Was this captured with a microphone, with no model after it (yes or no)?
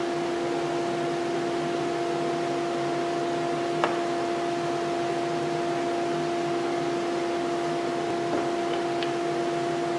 yes